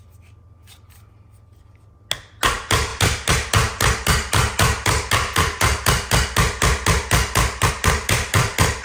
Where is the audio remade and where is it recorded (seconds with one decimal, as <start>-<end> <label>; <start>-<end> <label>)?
0.0-8.8 recorded